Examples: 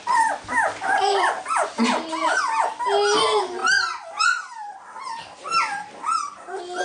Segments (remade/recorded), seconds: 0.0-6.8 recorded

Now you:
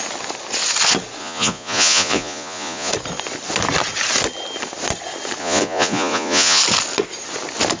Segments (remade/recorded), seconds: 0.0-1.2 recorded; 1.2-2.9 remade; 2.9-5.4 recorded; 5.4-6.6 remade; 6.6-7.8 recorded

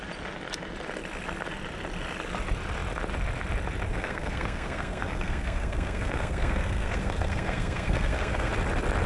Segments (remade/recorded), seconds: 0.0-3.9 recorded; 3.9-8.5 remade; 8.5-9.1 recorded

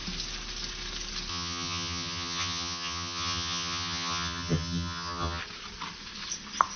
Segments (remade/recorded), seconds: 0.0-1.3 recorded; 1.3-5.4 remade; 5.4-6.8 recorded

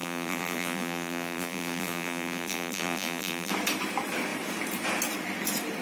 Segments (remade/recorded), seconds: 0.0-3.5 remade; 3.5-5.8 recorded

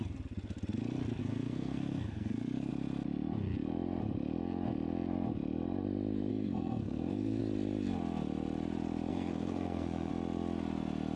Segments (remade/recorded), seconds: 0.0-1.2 recorded; 1.2-2.7 remade; 2.7-6.3 recorded; 6.3-7.4 remade; 7.4-9.1 recorded; 9.1-10.1 remade; 10.1-11.2 recorded